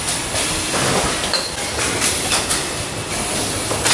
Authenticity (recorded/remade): recorded